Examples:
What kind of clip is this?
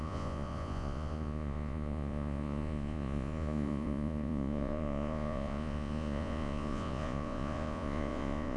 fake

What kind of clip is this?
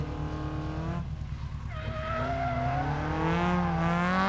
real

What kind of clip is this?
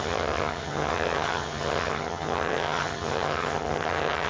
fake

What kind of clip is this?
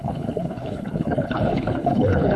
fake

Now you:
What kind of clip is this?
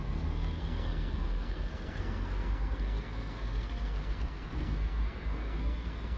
fake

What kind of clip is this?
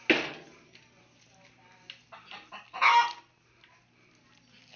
real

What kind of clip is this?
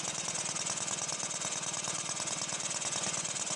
fake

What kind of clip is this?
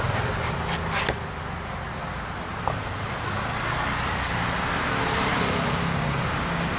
real